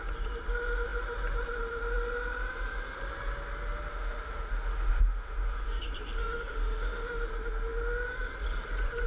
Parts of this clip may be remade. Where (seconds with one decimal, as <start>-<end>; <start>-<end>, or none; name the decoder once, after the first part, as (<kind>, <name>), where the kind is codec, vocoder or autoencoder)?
3.9-5.8 (autoencoder, DAC-VAE); 6.2-7.2